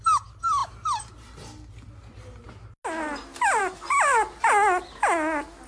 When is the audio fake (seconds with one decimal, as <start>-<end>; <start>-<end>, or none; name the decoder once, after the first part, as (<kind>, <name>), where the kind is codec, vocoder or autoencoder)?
none